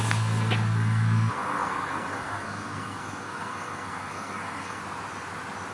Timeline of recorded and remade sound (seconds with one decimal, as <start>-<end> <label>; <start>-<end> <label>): 0.0-4.8 remade; 4.8-5.7 recorded